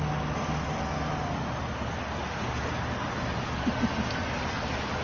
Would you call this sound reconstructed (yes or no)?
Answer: no